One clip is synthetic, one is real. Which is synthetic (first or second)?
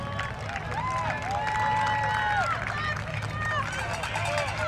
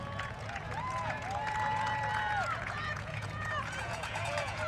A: second